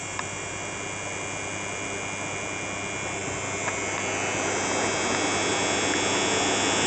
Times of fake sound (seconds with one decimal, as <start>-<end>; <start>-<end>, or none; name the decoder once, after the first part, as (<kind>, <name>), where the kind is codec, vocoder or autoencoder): none